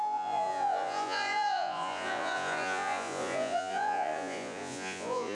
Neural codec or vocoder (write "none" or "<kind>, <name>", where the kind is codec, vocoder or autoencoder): vocoder, Vocos